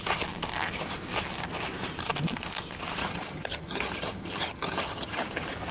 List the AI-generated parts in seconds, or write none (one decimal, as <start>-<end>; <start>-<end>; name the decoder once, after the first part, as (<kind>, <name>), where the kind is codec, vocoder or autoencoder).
3.0-5.3 (vocoder, HiFi-GAN)